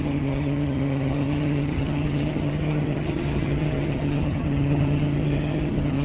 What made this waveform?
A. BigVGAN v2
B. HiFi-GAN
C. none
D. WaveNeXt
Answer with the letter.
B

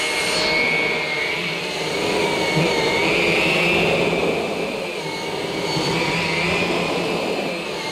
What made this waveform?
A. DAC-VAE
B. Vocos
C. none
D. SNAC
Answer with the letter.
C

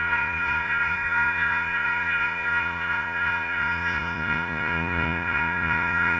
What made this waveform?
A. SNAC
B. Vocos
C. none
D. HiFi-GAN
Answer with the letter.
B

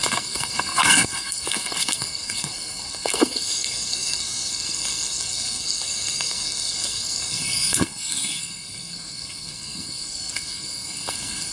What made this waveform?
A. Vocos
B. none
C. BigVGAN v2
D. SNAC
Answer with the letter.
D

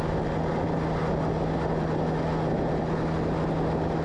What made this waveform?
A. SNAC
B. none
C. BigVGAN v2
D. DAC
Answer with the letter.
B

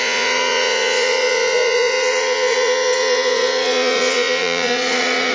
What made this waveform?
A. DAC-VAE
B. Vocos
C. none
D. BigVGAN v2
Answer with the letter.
B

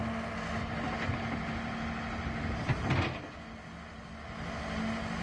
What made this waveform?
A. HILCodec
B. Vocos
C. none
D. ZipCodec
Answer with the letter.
C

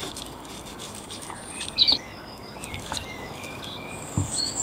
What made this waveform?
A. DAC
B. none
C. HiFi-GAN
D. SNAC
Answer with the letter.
A